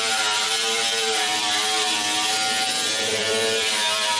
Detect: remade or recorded remade